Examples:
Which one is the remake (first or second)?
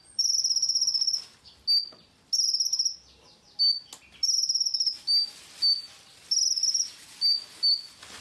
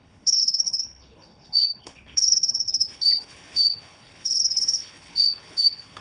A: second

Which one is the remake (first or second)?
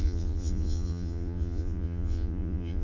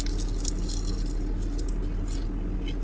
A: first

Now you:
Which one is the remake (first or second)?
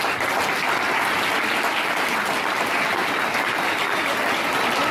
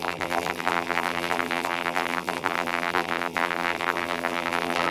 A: second